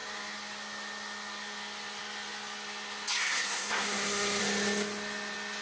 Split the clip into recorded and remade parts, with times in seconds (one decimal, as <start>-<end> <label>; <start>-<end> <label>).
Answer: 0.0-3.2 recorded; 3.2-4.4 remade; 4.4-5.6 recorded